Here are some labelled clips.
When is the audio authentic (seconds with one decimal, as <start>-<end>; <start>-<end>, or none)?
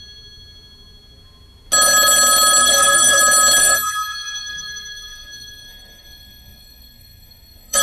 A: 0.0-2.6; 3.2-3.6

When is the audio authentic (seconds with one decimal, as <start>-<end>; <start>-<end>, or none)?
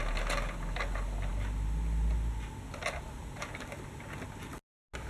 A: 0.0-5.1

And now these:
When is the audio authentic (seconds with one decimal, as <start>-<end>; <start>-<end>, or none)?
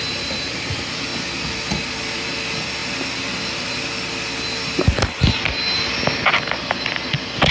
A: 1.1-1.8; 2.8-7.1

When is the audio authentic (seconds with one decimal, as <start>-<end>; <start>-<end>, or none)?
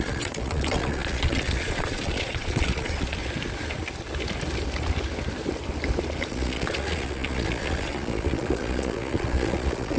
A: 3.2-6.2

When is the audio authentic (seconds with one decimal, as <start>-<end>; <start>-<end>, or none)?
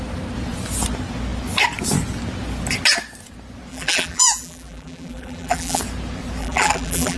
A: 0.0-3.7; 5.8-6.4